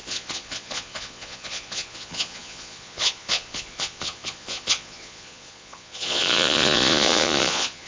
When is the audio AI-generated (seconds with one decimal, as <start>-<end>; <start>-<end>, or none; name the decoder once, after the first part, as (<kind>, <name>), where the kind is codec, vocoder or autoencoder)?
0.0-7.9 (vocoder, Vocos)